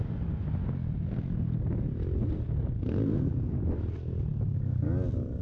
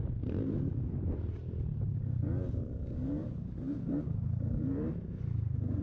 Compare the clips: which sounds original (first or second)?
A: first